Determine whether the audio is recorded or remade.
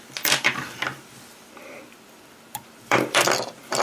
remade